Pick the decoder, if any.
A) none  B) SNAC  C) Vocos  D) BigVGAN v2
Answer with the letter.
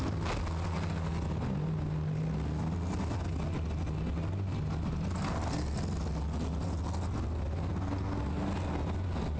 A